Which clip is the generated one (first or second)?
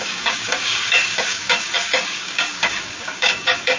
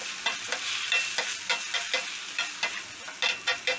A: first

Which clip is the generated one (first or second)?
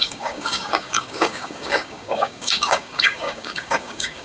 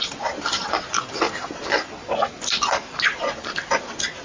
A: first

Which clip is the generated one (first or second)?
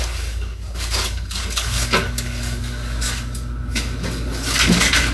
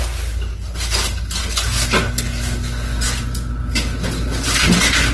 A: first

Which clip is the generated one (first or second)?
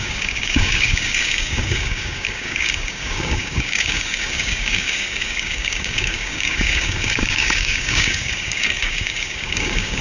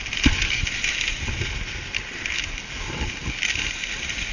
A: first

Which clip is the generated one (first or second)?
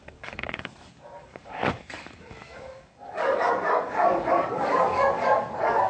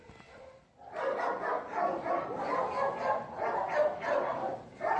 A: first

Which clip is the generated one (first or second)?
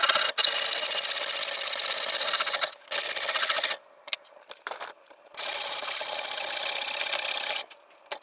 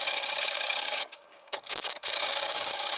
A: second